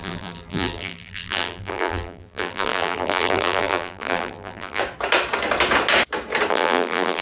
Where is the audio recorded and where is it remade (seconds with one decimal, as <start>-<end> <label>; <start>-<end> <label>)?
0.0-4.8 remade; 4.8-6.5 recorded; 6.5-7.2 remade